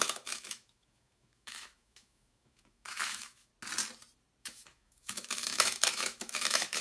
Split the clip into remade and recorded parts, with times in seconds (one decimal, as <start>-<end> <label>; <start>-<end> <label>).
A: 0.0-3.5 remade; 3.5-4.4 recorded; 4.4-6.8 remade